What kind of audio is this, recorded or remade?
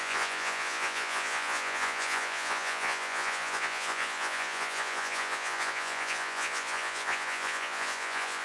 remade